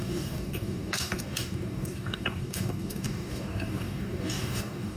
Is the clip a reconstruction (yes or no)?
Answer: yes